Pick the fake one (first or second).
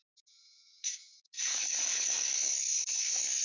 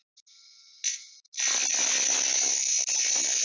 first